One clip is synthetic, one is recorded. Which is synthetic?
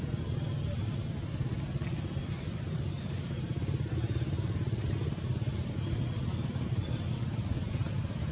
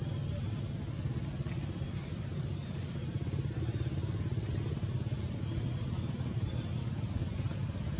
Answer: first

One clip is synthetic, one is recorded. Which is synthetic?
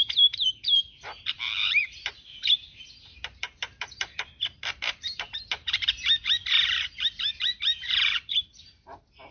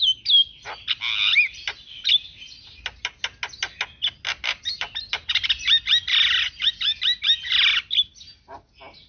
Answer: first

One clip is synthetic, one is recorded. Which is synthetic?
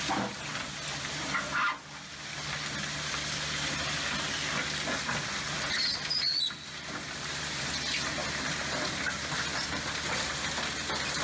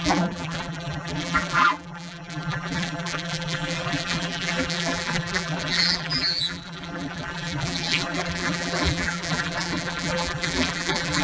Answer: second